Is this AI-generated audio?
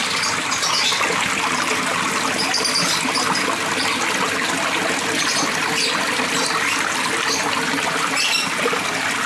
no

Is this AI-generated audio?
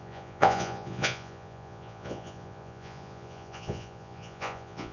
yes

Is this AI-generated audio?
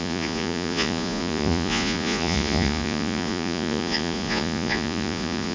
yes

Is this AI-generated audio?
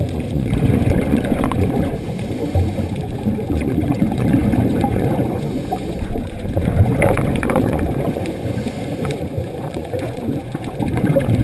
yes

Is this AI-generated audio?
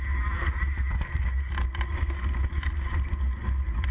no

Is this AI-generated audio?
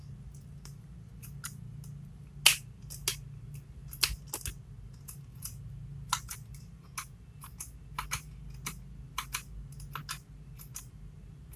no